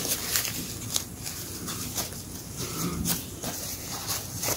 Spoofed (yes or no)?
yes